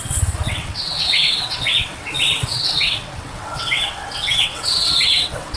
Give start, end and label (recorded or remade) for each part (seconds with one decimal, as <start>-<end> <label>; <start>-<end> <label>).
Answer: 0.0-5.6 remade